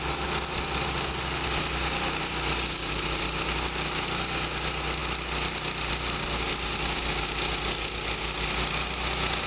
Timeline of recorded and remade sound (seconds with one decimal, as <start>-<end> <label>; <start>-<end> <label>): 0.0-9.5 recorded